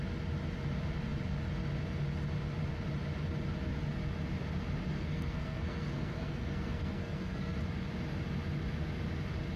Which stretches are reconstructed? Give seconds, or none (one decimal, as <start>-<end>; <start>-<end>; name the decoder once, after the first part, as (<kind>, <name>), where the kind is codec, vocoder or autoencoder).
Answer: 4.9-7.6 (codec, SNAC)